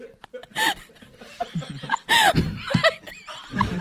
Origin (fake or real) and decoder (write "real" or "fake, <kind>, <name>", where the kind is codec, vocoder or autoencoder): fake, vocoder, BigVGAN v2